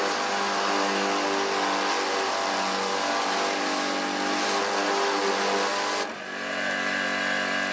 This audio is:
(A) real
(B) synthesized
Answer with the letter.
A